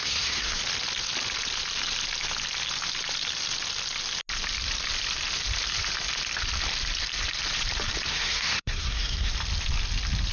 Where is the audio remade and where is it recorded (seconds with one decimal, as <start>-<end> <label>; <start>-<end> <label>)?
0.0-0.6 remade; 0.6-8.1 recorded; 8.1-9.3 remade; 9.3-10.3 recorded